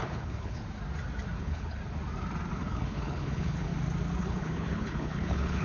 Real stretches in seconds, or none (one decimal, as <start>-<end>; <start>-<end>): 0.6-1.4; 1.8-2.5; 3.7-4.2